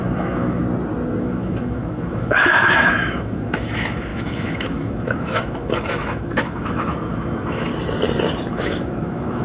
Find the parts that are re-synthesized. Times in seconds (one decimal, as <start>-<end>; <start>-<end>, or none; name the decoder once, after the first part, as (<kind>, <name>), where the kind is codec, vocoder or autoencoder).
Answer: 0.0-0.6 (autoencoder, DAC-VAE); 1.2-7.7; 8.5-9.4